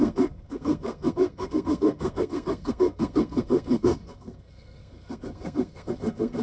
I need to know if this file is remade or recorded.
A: remade